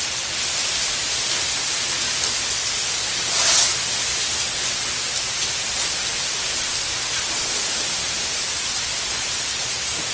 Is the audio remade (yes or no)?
no